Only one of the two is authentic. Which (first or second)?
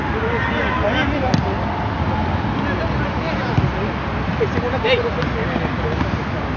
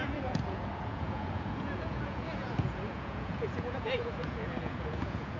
first